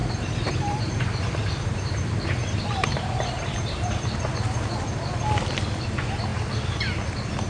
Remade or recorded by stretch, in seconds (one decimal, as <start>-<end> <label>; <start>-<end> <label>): 0.0-4.2 remade; 4.2-7.5 recorded